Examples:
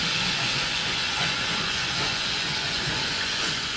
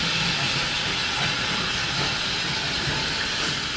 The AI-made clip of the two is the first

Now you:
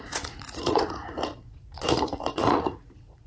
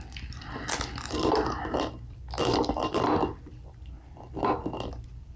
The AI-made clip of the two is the first